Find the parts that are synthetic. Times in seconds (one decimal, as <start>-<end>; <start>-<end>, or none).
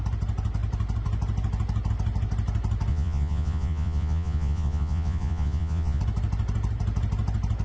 2.9-6.0